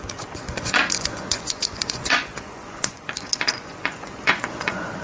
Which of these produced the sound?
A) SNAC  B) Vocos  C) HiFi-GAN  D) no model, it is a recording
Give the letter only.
B